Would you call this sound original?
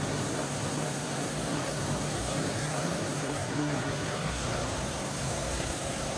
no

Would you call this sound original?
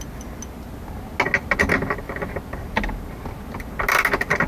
yes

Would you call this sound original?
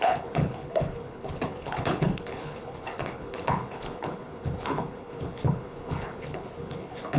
no